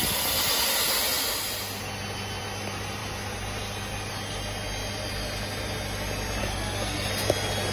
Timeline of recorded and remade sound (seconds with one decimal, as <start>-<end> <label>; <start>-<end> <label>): 0.0-6.4 recorded; 6.4-7.1 remade; 7.1-7.7 recorded

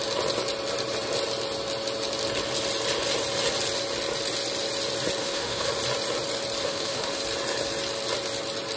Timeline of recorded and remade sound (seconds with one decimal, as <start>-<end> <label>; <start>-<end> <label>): 0.0-5.2 recorded; 5.2-5.7 remade; 5.7-6.6 recorded; 6.6-7.2 remade; 7.2-8.8 recorded